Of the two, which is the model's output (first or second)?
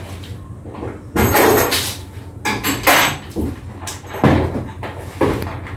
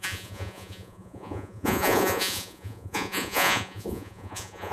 second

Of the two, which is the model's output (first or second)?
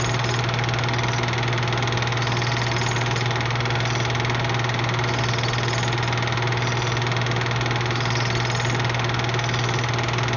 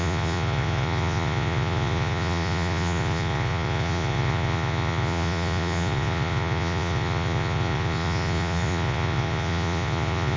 second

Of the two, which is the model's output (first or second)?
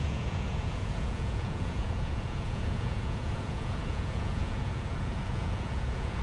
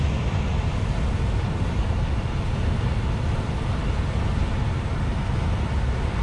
first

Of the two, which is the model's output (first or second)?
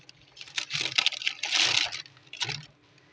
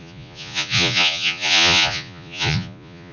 second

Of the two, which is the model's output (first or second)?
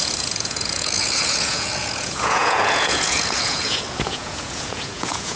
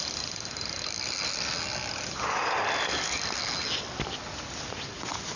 first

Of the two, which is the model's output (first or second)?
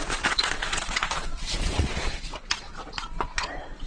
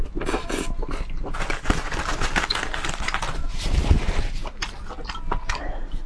first